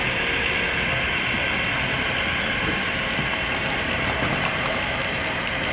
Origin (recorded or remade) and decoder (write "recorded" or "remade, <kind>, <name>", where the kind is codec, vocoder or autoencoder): recorded